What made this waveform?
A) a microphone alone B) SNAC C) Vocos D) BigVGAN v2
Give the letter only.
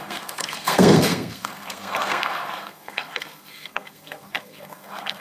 B